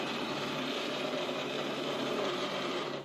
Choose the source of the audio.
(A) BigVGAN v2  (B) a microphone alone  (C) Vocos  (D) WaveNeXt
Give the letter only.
A